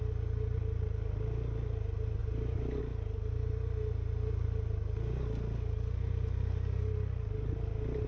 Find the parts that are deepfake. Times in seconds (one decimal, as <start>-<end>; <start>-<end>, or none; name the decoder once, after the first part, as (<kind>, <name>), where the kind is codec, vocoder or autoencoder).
2.2-2.8 (vocoder, BigVGAN v2)